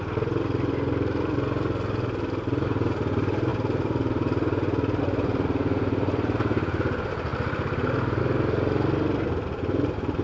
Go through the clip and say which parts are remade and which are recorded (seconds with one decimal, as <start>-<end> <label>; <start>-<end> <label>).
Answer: 0.0-10.2 recorded